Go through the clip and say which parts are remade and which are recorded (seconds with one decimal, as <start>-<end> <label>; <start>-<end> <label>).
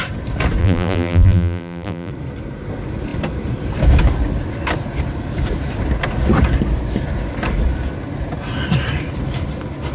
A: 0.0-0.6 recorded; 0.6-2.1 remade; 2.1-9.9 recorded